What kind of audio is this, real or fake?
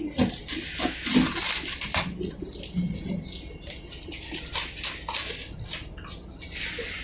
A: real